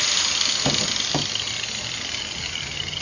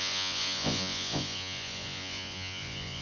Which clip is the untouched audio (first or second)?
first